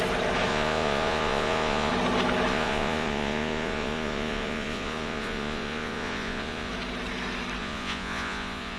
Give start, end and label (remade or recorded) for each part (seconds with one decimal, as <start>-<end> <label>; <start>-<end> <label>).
0.0-0.5 recorded; 0.5-1.9 remade; 1.9-2.5 recorded; 2.5-6.7 remade; 6.7-7.6 recorded; 7.6-8.8 remade